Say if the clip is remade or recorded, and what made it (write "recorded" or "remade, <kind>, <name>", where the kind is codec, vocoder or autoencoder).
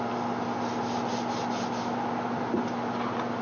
recorded